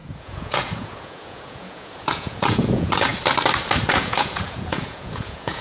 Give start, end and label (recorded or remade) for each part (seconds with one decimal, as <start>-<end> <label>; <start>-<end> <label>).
0.0-3.1 remade; 3.1-3.9 recorded; 3.9-5.6 remade